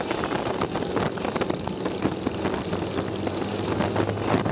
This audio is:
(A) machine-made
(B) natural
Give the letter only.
B